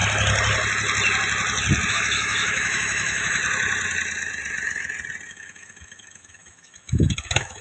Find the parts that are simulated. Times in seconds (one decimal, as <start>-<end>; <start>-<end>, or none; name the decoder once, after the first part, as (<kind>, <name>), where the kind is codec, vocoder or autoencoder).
1.9-3.4 (autoencoder, DAC-VAE); 5.3-7.6

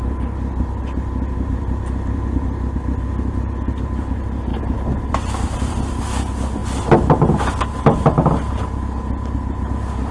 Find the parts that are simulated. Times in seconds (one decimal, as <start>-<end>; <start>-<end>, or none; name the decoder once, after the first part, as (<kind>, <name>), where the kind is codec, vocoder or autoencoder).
4.5-6.0 (vocoder, BigVGAN v2)

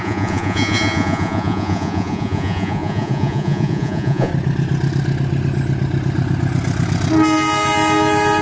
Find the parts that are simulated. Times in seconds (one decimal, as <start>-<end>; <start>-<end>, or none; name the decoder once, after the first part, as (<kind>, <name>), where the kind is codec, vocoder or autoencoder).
0.0-4.3 (vocoder, Vocos)

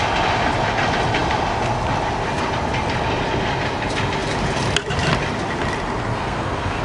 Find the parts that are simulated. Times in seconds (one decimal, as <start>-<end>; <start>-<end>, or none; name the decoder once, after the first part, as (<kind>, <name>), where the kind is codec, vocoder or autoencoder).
6.1-6.8 (codec, SNAC)

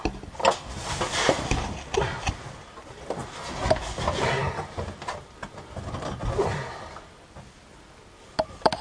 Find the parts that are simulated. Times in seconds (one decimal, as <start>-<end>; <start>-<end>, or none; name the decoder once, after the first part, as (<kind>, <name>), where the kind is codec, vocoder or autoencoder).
none

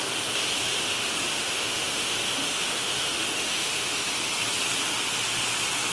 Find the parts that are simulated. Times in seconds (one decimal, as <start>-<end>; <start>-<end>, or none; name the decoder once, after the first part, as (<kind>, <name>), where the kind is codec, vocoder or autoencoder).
0.6-4.1 (autoencoder, DAC-VAE)

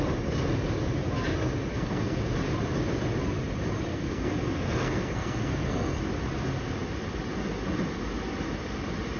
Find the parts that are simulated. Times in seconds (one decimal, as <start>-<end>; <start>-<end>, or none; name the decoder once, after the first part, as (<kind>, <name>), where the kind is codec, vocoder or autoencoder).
1.7-2.2 (codec, SNAC); 3.9-6.0

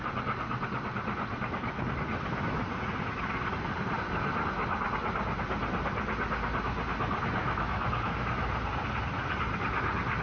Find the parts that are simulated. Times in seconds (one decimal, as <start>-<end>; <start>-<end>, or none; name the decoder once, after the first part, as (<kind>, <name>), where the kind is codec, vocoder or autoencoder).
7.4-8.3 (autoencoder, DAC-VAE)